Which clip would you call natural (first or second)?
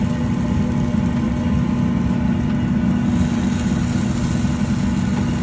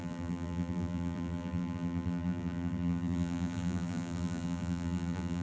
first